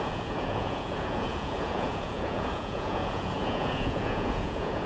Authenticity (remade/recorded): remade